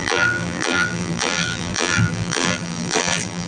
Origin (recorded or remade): remade